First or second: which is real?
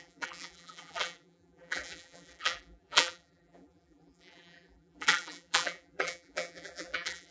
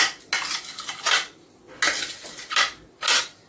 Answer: second